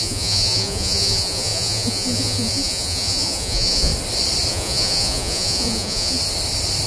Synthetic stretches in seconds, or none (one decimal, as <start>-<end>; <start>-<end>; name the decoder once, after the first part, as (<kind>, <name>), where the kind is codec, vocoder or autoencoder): 0.0-3.9 (vocoder, Vocos); 4.5-6.2